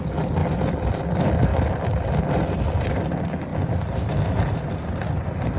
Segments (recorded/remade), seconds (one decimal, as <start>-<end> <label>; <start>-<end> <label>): 0.0-5.6 recorded